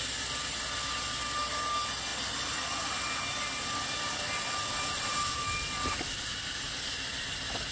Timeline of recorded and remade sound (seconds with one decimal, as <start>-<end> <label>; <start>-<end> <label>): 0.0-7.7 recorded